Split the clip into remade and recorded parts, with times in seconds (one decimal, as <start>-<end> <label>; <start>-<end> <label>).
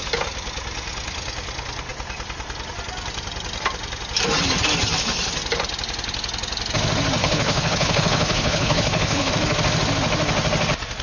0.0-7.2 recorded; 7.2-9.3 remade; 9.3-11.0 recorded